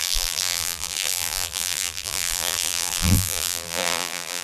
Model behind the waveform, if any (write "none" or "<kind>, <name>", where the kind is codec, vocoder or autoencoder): vocoder, BigVGAN v2